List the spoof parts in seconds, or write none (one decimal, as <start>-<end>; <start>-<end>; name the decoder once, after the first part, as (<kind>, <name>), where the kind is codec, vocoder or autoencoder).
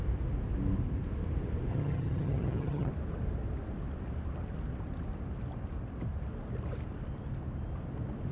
1.7-2.9 (vocoder, HiFi-GAN)